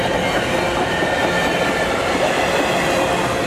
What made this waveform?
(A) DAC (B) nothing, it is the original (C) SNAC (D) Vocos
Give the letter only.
B